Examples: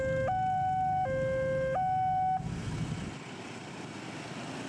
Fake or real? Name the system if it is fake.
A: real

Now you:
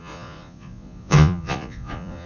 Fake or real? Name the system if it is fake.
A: fake, vocoder, Vocos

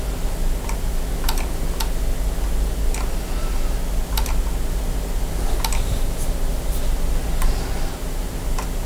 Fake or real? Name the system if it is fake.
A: real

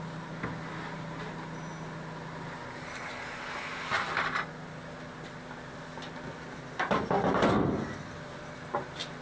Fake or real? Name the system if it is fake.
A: real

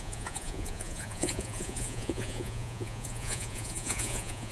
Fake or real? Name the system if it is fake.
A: fake, vocoder, Vocos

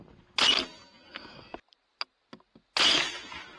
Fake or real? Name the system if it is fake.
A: real